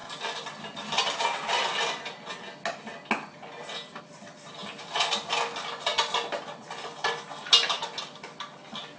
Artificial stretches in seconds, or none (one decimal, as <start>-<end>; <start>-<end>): none